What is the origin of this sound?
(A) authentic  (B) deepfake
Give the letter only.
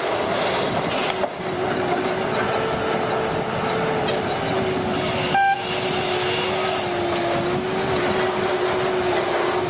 A